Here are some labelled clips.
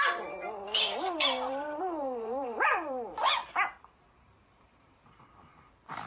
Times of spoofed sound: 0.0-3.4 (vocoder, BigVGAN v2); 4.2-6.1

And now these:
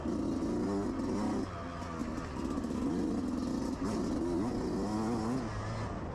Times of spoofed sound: 2.0-2.9 (vocoder, BigVGAN v2)

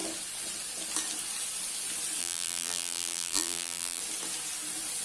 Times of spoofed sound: 2.2-4.0 (vocoder, BigVGAN v2)

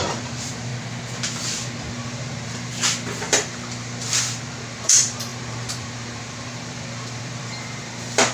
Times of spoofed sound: 0.0-0.7 (vocoder, BigVGAN v2); 1.9-2.7; 3.2-8.3